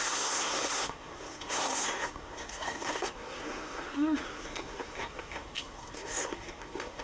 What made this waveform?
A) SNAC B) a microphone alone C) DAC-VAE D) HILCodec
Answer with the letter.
A